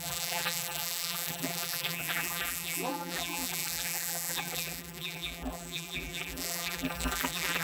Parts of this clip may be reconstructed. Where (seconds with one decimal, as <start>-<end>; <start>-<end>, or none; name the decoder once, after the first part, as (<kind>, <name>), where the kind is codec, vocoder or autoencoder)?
0.0-7.6 (vocoder, BigVGAN v2)